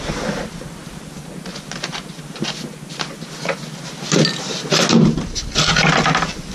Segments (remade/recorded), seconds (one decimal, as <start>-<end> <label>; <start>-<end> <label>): 0.0-6.5 recorded